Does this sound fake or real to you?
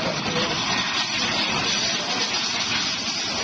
real